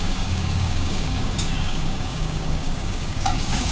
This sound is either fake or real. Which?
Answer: fake